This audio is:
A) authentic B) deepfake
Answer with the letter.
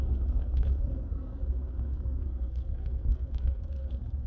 B